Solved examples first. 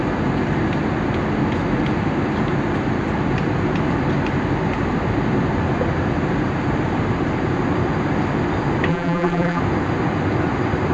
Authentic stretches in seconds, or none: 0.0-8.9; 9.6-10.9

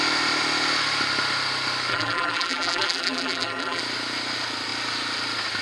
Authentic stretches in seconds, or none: 0.0-1.9; 3.8-5.6

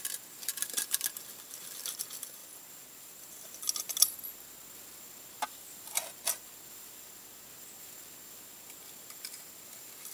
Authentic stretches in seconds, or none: 0.0-0.5; 1.0-10.1